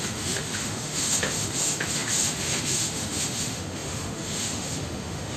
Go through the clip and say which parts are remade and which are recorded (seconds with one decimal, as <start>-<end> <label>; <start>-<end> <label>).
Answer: 0.0-5.4 remade